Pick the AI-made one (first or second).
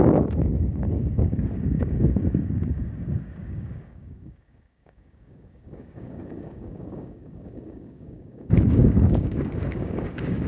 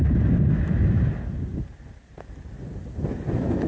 first